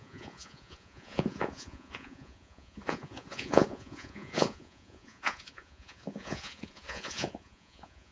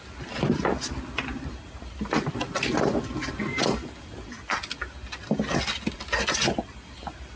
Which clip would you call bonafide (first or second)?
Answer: second